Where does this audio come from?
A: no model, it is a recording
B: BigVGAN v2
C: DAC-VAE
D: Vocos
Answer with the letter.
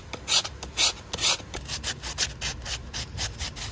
A